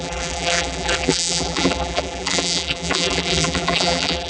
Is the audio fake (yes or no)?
yes